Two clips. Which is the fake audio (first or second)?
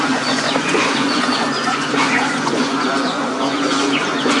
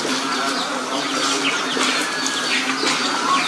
first